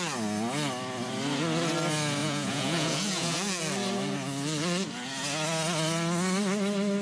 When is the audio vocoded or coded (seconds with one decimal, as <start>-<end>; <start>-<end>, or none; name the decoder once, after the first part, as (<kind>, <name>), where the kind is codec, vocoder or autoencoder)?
2.2-3.6 (vocoder, Vocos)